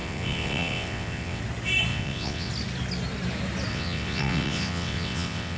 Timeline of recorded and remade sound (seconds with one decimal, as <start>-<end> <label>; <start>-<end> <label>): 0.0-1.4 remade; 1.4-1.9 recorded; 1.9-2.5 remade; 2.5-3.7 recorded; 3.7-5.6 remade